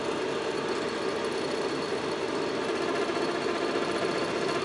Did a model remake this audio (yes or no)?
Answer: no